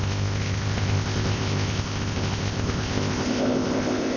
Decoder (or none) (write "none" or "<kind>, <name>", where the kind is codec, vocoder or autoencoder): codec, ZipCodec